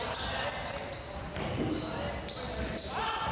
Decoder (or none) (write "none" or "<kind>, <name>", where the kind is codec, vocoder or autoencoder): none